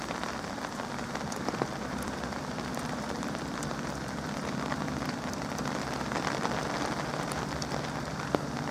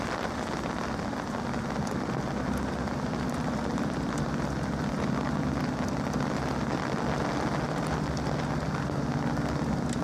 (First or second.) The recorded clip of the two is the second